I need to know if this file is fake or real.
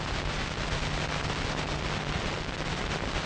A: real